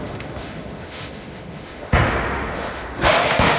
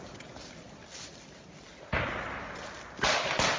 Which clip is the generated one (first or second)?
first